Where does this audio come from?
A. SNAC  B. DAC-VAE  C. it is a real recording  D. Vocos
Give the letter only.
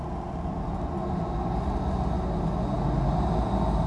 C